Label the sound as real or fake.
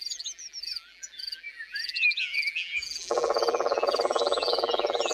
fake